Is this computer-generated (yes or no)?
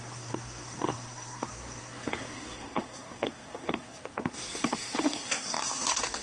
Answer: yes